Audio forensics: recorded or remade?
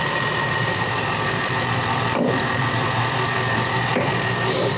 remade